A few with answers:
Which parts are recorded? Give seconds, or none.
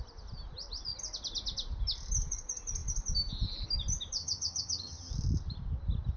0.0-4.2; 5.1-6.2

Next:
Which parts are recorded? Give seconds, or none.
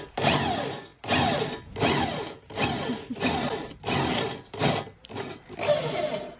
0.0-6.4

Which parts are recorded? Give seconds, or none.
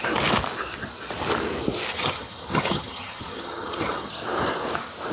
0.0-1.9; 4.1-5.1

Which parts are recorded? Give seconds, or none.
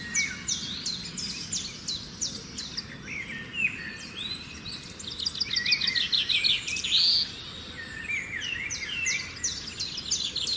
0.0-10.6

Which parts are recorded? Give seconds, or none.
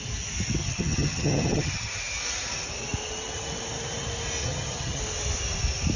0.0-0.6; 2.0-4.4; 5.0-6.0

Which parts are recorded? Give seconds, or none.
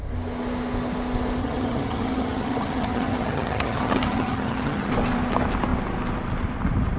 0.0-1.4; 4.9-7.0